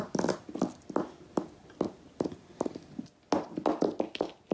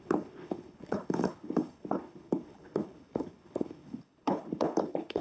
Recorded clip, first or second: first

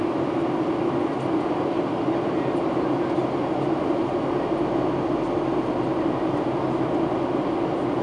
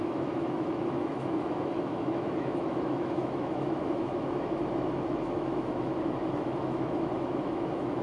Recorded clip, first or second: first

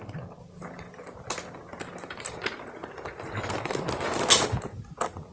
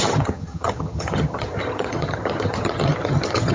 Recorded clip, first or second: first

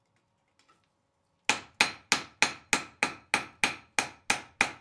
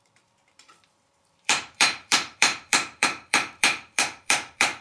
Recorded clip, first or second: first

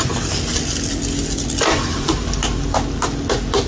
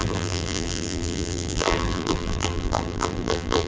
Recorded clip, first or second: first